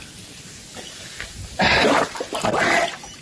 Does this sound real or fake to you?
real